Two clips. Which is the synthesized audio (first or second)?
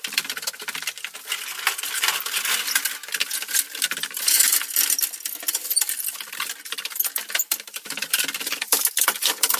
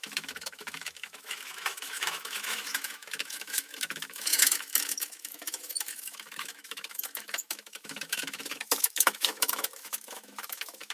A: second